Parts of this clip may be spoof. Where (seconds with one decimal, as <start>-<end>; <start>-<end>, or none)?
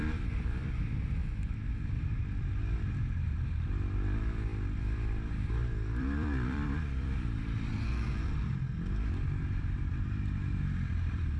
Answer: 0.0-1.2; 1.9-4.5; 5.5-11.4